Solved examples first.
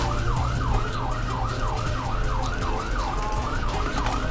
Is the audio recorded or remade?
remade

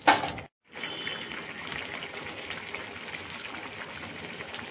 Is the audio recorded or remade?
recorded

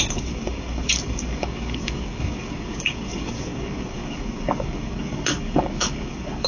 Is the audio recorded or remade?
remade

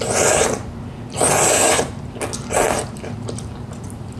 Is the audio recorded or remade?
recorded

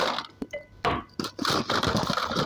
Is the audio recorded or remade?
recorded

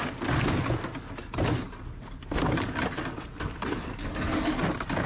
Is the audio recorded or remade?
recorded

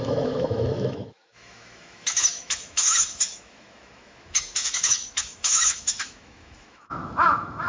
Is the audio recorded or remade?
remade